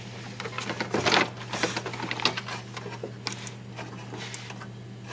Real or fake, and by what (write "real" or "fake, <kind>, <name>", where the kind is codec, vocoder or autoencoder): real